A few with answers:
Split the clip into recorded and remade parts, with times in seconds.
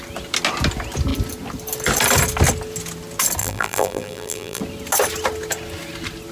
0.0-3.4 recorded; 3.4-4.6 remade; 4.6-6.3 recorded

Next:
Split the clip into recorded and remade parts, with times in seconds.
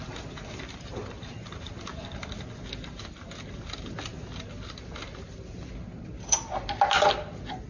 0.0-7.7 recorded